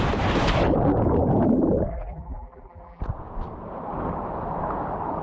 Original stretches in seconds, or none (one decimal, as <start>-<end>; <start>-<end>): 0.0-1.9; 3.0-5.2